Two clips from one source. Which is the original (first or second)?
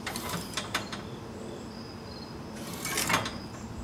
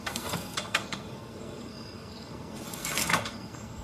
first